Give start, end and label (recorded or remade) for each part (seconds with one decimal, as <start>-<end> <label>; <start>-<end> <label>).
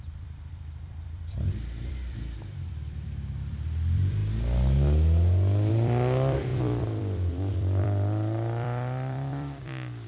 0.0-4.2 remade; 4.2-5.7 recorded; 5.7-10.1 remade